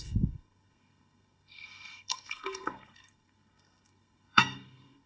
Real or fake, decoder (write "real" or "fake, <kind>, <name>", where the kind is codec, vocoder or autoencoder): fake, codec, SNAC